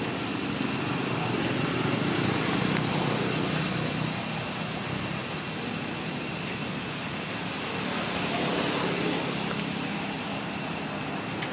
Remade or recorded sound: recorded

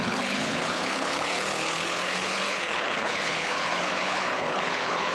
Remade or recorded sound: remade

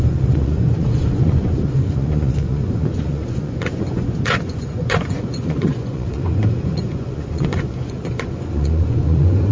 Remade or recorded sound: remade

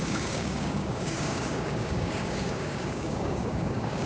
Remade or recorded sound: remade